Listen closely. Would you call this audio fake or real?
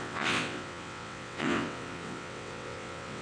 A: fake